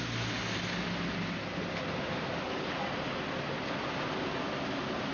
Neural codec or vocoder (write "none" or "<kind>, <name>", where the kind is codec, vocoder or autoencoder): none